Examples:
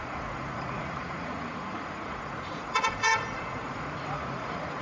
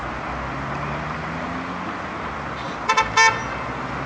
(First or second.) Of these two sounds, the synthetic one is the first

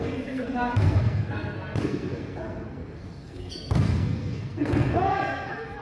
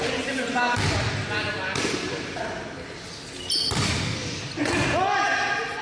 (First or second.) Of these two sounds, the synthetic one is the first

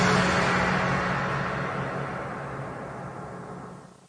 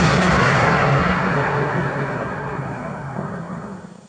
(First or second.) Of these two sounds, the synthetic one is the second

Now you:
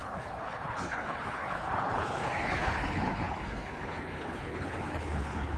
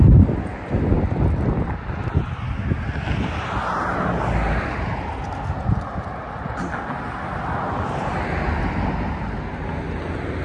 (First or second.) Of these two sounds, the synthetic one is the first